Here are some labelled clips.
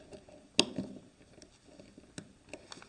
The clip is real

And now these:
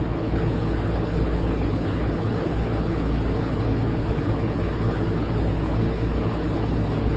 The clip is fake